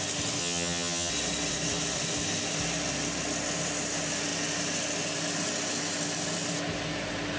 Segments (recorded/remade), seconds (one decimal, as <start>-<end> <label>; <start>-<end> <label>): 0.0-0.4 recorded; 0.4-1.1 remade; 1.1-7.4 recorded